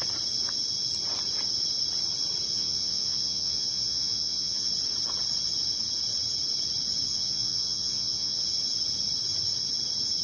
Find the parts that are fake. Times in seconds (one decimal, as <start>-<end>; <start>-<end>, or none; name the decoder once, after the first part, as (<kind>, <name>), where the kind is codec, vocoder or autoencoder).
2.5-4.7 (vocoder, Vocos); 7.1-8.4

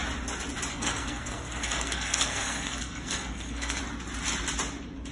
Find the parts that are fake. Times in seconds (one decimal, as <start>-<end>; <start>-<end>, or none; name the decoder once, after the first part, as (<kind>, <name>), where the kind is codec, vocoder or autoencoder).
0.7-3.8 (codec, SNAC)

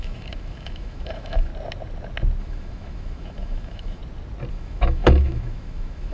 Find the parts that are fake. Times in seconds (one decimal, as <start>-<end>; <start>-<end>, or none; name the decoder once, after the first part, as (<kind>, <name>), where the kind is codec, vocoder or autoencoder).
0.0-1.5 (autoencoder, DAC-VAE); 2.4-4.0; 4.5-6.1

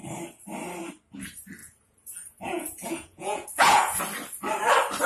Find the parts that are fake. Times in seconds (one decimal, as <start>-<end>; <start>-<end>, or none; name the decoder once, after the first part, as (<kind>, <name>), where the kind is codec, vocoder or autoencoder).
1.6-4.0 (vocoder, Vocos)